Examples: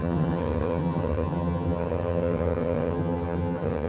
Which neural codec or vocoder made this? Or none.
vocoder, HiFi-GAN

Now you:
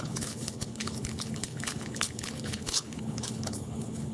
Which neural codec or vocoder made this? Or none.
codec, HILCodec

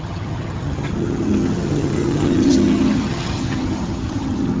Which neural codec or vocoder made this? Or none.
vocoder, HiFi-GAN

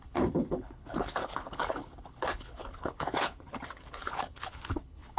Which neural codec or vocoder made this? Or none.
codec, HILCodec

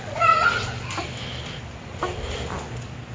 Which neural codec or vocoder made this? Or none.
none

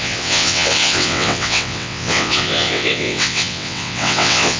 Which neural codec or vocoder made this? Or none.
vocoder, WaveNeXt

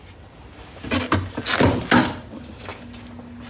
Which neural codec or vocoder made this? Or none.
none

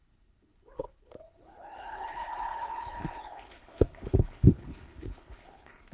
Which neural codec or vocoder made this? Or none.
codec, HILCodec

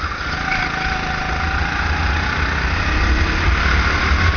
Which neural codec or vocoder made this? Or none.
none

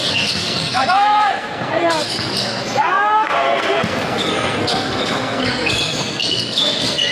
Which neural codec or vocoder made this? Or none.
codec, SNAC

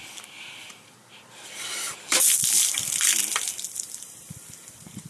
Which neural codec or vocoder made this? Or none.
vocoder, BigVGAN v2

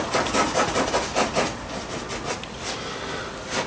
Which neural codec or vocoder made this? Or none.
none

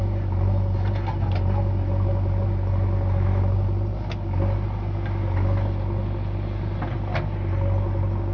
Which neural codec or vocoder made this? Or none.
none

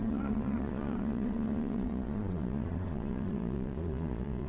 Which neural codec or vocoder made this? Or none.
vocoder, Vocos